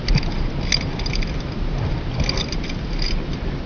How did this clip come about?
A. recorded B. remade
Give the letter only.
A